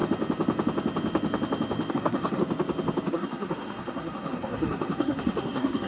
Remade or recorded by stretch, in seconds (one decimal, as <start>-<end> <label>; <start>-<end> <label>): 0.0-1.9 recorded; 1.9-2.4 remade; 2.4-3.1 recorded; 3.1-5.9 remade